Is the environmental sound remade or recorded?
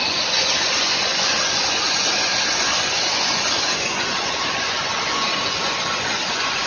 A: remade